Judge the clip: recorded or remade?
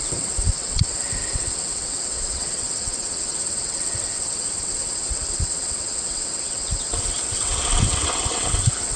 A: remade